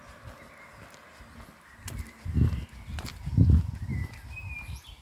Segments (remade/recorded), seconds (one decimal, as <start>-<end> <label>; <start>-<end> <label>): 0.0-5.0 recorded